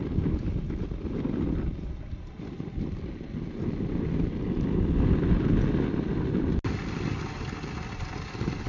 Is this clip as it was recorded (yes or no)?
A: yes